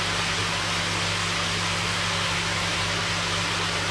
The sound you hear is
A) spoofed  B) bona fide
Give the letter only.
B